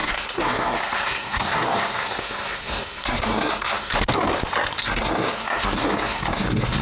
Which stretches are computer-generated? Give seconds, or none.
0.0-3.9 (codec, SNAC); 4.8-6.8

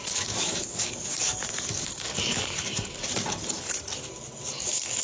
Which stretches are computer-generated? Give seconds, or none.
0.0-3.0 (codec, DAC); 4.5-5.0

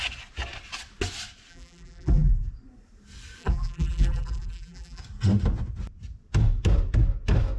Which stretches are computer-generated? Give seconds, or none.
1.5-2.5 (vocoder, BigVGAN v2); 3.4-5.0

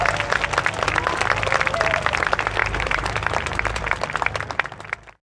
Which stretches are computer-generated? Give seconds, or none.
2.6-3.8 (vocoder, BigVGAN v2)